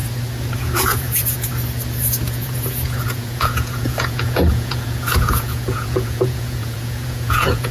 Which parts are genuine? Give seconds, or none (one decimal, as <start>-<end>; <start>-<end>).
0.0-0.6; 1.5-2.2

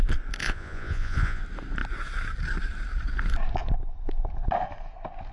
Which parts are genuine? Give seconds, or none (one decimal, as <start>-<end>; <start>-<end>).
0.0-0.4; 1.4-5.3

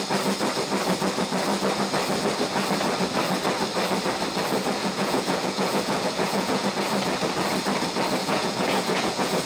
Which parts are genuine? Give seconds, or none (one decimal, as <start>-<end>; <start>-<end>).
0.0-4.8; 6.7-8.2